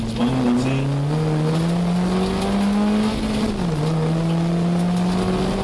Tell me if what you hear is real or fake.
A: real